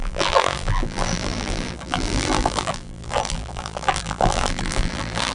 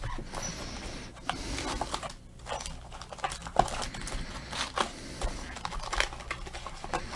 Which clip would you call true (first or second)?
second